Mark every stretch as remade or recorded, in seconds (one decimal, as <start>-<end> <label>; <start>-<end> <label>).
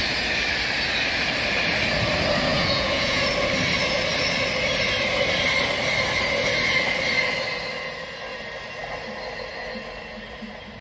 0.0-2.5 recorded; 2.5-3.2 remade; 3.2-10.8 recorded